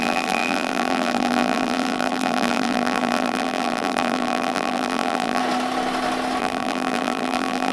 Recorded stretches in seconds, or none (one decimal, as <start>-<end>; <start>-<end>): 5.4-6.4